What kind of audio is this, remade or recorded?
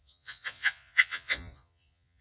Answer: remade